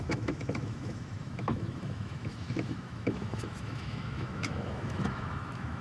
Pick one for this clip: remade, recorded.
remade